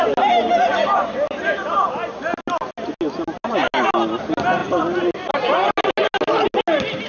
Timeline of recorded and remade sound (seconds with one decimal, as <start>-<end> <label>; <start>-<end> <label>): 0.0-7.1 recorded